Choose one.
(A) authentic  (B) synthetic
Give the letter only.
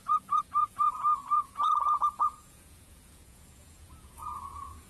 B